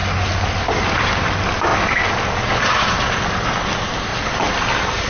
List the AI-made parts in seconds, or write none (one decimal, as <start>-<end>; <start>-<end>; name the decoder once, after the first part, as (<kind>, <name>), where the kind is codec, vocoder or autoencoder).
none